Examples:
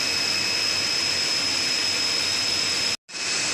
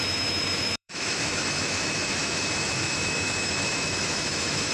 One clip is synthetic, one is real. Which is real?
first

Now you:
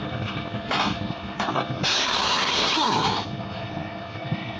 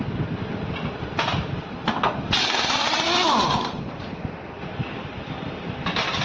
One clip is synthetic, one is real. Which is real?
second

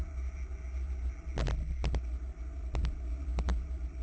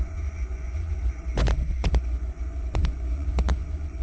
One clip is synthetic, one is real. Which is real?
first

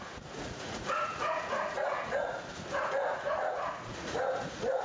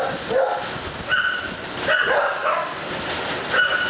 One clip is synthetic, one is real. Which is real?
second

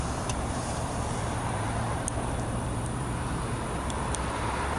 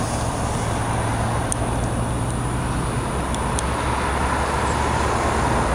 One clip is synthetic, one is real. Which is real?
second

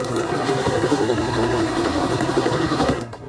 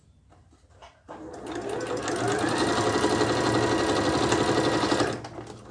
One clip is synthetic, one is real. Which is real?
second